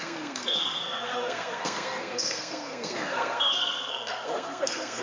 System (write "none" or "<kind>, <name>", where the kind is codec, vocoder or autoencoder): codec, SNAC